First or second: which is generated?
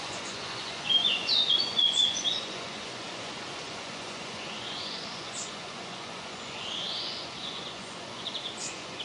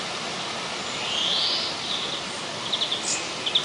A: first